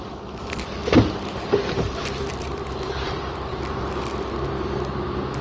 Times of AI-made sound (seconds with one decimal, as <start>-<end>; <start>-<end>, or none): 0.8-3.8